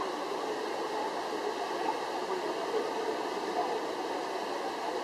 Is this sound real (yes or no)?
yes